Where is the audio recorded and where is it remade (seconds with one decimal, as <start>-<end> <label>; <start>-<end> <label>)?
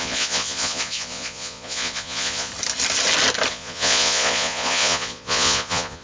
0.0-2.5 remade; 2.5-3.5 recorded; 3.5-6.0 remade